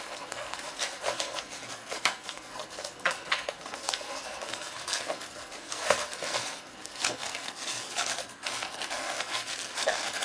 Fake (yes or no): yes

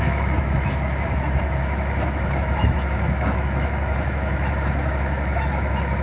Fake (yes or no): yes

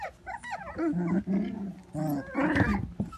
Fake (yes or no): no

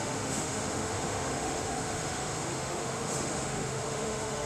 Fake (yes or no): yes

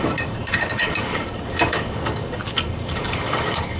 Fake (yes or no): yes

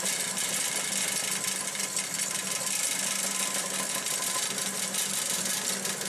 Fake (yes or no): no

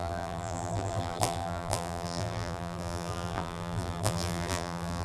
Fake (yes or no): yes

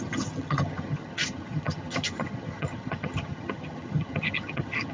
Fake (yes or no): yes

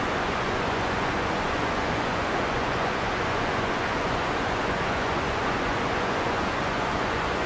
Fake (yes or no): yes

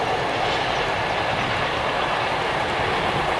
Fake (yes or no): no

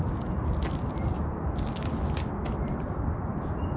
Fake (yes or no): no